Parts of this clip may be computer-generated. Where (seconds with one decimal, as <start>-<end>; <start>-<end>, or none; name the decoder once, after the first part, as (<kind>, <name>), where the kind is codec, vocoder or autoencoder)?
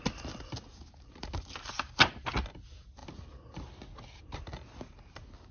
none